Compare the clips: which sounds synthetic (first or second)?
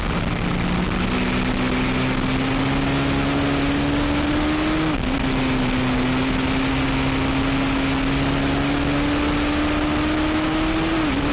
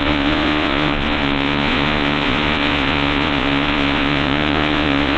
second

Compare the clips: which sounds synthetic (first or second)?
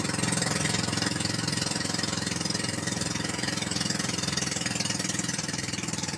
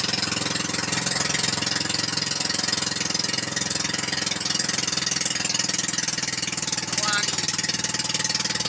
first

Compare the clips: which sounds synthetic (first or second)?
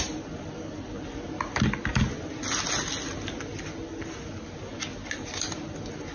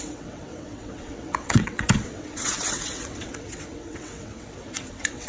second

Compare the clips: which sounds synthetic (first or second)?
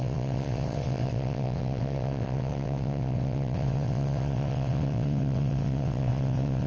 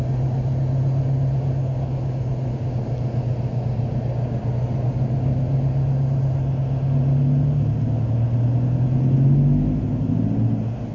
first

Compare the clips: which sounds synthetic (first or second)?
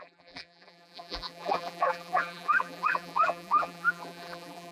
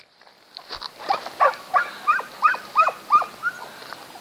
first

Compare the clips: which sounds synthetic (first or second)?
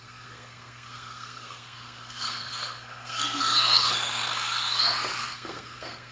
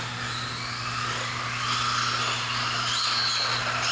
first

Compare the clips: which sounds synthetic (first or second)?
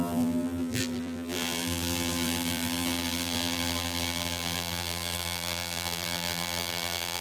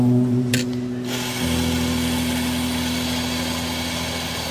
first